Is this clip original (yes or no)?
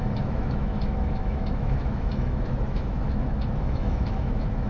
no